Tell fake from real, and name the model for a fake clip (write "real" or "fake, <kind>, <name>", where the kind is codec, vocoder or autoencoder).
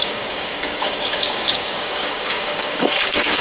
fake, codec, DAC